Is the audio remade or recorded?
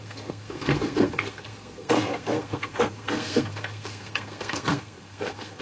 remade